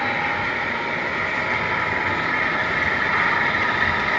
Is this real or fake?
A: real